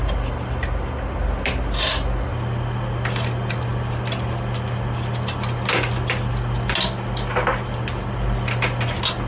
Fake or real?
real